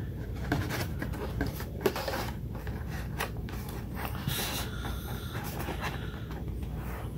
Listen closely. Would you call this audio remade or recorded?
remade